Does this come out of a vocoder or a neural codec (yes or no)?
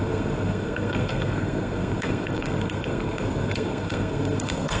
yes